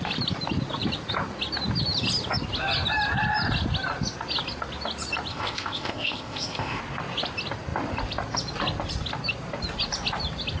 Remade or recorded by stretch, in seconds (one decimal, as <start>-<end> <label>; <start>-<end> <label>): 0.0-5.3 recorded; 5.3-6.8 remade; 6.8-10.6 recorded